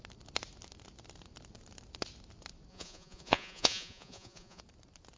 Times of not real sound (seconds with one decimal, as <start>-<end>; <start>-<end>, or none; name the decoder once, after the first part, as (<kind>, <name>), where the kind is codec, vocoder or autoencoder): 2.7-4.6 (vocoder, Vocos)